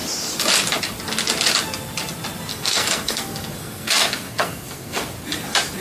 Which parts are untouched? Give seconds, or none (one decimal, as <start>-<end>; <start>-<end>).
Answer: 0.0-2.5; 5.1-5.8